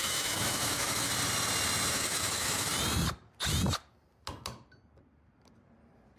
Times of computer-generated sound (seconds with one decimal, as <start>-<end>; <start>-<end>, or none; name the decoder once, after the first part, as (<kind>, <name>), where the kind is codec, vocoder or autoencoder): 0.0-1.1 (autoencoder, DAC-VAE); 1.9-2.7